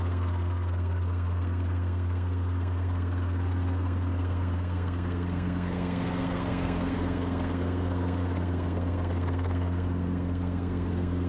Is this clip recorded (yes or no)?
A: no